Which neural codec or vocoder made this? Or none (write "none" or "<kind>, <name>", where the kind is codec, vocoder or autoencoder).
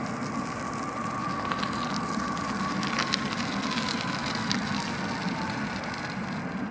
none